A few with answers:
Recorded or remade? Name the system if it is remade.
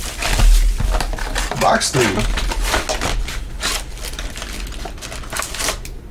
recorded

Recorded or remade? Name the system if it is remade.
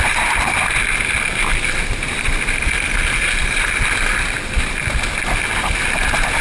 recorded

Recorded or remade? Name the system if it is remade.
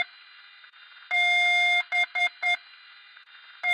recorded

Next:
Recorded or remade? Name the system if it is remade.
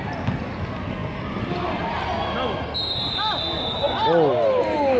recorded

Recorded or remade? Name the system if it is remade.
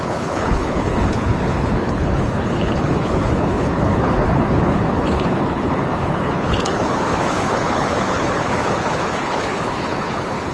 remade, codec, HILCodec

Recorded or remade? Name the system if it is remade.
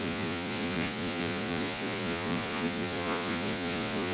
remade, vocoder, Vocos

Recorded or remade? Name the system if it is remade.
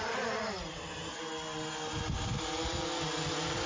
recorded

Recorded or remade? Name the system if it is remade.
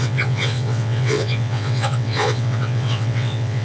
remade, vocoder, WaveNeXt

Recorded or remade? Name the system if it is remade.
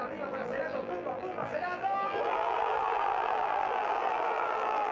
remade, vocoder, BigVGAN v2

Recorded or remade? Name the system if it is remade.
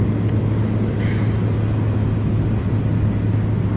recorded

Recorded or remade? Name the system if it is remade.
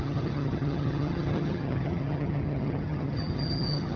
remade, vocoder, HiFi-GAN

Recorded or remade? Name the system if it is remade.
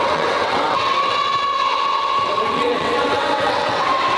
remade, vocoder, WaveNeXt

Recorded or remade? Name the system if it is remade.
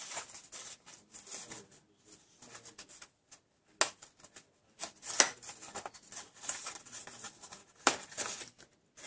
recorded